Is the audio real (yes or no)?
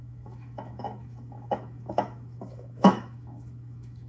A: no